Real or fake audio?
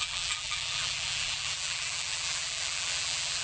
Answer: fake